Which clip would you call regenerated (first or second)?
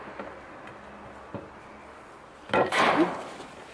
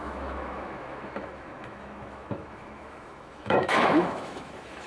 second